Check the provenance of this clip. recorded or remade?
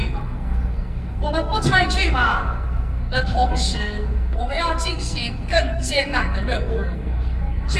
remade